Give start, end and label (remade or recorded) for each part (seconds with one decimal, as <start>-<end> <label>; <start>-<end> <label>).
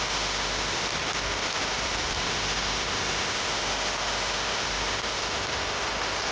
0.0-0.9 remade; 0.9-2.2 recorded; 2.2-5.2 remade; 5.2-6.3 recorded